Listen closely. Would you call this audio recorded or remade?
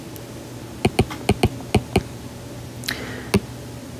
recorded